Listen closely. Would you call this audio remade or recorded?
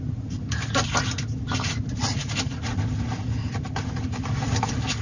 recorded